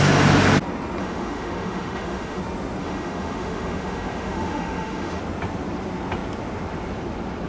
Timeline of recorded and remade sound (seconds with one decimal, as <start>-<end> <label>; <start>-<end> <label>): 0.0-1.0 recorded; 1.0-2.4 remade; 2.4-2.8 recorded; 2.8-5.2 remade; 5.2-7.5 recorded